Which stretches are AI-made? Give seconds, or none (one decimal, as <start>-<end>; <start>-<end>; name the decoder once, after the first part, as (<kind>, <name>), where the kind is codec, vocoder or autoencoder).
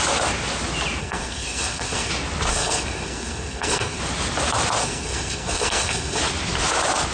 1.0-2.1 (codec, SNAC); 2.5-4.0; 4.8-6.2